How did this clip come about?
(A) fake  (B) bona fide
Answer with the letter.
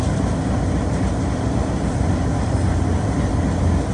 B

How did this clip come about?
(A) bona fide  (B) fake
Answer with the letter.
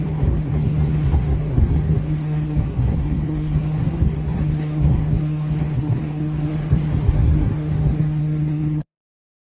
B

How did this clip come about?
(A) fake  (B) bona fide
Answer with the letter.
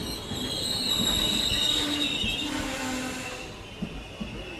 B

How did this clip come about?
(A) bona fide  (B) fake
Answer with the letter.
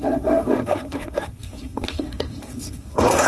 B